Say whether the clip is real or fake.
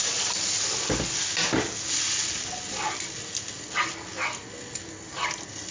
real